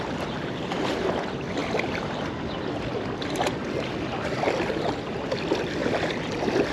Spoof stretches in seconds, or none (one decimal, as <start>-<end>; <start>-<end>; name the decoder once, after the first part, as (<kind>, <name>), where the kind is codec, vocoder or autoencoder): none